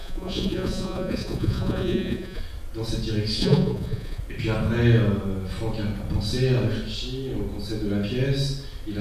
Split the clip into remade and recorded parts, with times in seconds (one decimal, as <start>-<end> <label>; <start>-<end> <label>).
0.0-2.4 remade; 2.4-3.4 recorded; 3.4-4.2 remade; 4.2-9.0 recorded